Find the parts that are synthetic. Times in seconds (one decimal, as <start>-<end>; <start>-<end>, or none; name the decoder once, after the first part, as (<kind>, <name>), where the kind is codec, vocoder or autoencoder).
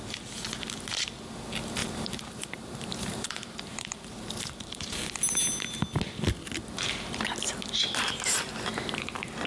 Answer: 1.8-5.0 (vocoder, BigVGAN v2)